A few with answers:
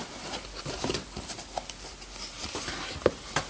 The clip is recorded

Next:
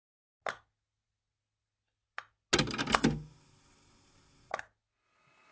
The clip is recorded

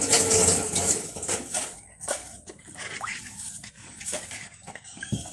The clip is remade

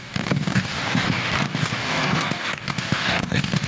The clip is remade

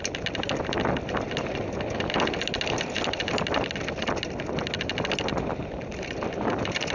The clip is recorded